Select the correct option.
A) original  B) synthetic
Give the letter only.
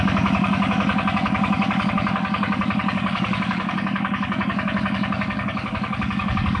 B